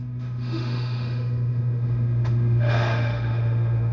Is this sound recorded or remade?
remade